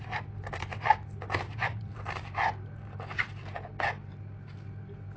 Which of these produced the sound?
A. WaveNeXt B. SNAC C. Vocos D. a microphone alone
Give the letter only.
D